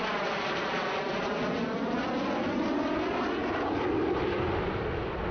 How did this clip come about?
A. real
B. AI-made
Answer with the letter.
A